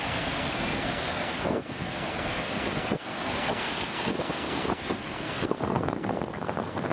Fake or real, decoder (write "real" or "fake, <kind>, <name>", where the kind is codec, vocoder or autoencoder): fake, codec, SNAC